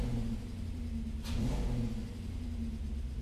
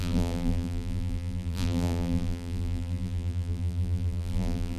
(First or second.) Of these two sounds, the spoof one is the second